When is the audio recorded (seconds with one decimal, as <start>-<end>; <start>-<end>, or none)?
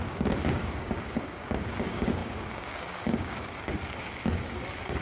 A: none